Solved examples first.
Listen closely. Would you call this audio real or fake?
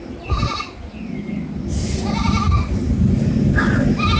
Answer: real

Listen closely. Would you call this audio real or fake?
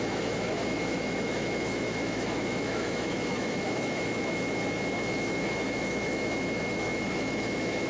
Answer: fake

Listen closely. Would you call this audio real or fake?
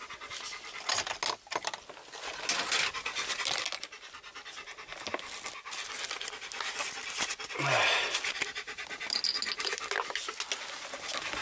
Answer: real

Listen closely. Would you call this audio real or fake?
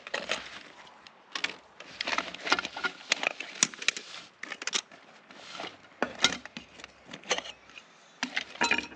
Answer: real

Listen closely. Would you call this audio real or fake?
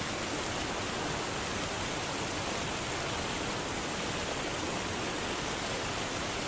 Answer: real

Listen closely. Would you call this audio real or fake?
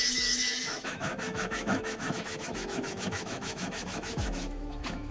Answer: fake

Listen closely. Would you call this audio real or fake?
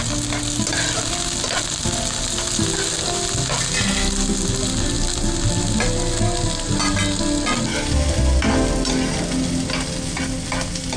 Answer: real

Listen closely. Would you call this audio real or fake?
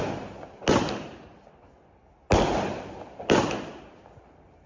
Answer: real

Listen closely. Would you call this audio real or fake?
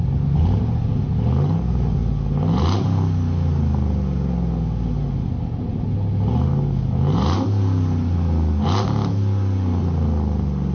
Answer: real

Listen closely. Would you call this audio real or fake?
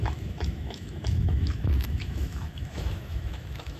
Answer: fake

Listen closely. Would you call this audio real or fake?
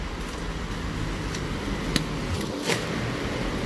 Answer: real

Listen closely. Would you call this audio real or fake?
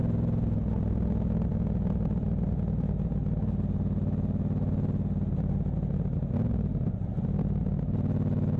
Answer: real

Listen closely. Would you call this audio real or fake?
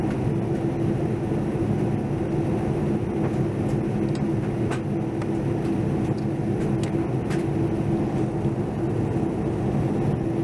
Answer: real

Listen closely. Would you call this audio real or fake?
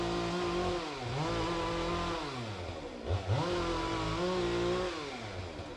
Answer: real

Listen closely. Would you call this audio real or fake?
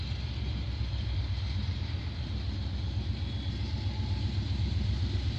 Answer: real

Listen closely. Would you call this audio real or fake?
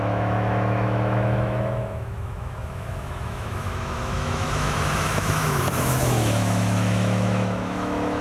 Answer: fake